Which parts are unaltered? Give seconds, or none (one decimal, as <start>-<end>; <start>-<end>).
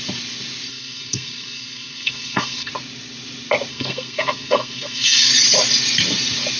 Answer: 0.0-0.7; 2.7-3.7; 5.3-6.6